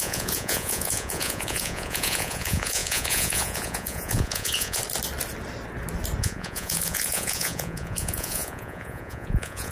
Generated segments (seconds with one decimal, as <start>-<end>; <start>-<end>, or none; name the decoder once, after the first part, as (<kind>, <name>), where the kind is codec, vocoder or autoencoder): 0.0-4.8 (vocoder, Vocos); 6.2-9.7